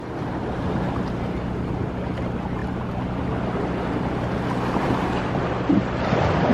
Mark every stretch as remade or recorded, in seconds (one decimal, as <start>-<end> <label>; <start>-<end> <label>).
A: 0.0-6.5 recorded